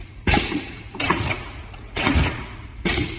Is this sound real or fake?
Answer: fake